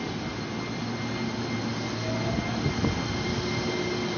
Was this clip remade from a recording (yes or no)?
no